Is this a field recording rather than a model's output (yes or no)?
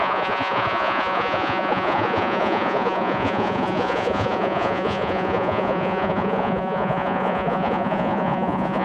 no